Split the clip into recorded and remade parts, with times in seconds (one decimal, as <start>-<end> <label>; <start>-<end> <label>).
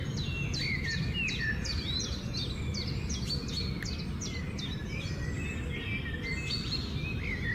0.0-7.5 recorded